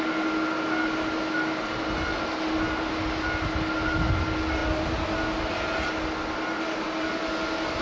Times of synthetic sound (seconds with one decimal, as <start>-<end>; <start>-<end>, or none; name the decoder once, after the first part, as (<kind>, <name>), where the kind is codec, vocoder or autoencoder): none